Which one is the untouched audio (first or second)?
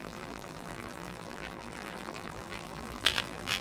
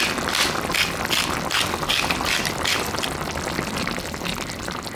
second